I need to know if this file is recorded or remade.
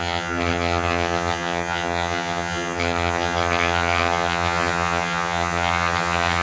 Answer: remade